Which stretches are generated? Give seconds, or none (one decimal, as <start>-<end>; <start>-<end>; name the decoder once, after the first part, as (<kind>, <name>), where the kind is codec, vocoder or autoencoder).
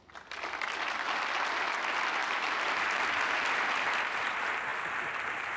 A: none